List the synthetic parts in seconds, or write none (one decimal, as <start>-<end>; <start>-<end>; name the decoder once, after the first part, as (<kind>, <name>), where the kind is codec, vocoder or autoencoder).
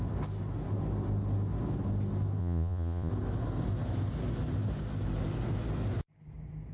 2.4-3.1 (vocoder, Vocos)